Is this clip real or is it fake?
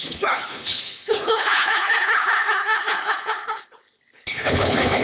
fake